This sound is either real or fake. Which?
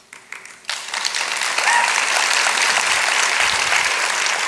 real